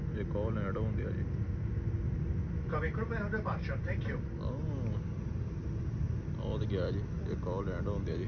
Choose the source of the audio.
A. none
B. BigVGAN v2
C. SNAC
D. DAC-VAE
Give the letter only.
A